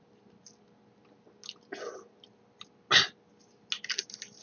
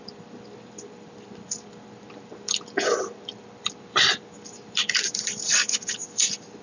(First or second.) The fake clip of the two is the second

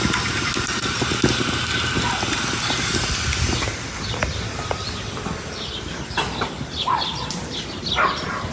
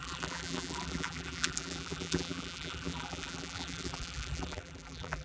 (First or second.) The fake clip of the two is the second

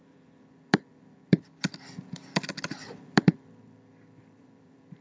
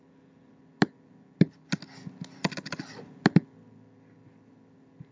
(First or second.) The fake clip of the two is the first